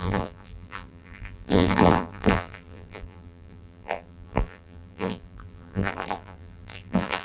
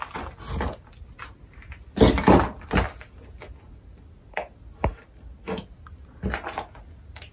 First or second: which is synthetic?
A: first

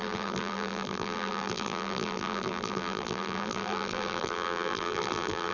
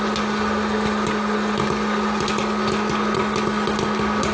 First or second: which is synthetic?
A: first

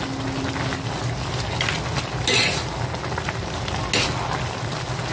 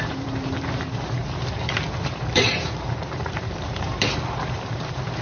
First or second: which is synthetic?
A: second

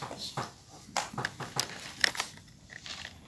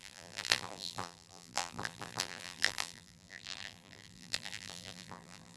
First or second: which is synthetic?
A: second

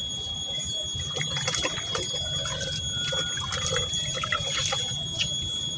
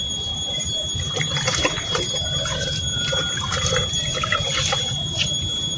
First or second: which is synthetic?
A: second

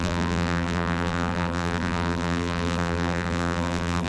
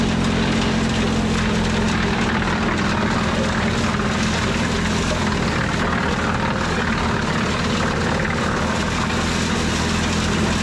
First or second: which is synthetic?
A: first